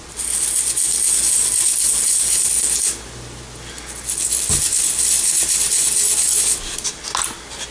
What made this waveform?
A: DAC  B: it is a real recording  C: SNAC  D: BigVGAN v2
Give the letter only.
B